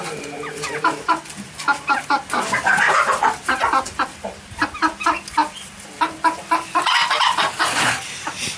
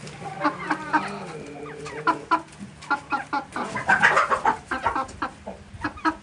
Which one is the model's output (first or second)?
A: first